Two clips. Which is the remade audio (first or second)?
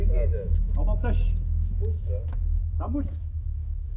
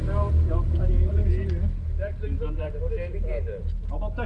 first